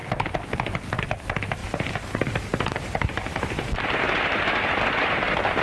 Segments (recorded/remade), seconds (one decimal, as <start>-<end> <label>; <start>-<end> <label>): 0.0-1.6 recorded; 1.6-3.7 remade; 3.7-5.6 recorded